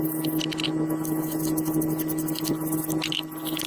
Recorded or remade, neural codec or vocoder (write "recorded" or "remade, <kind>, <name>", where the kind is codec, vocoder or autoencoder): recorded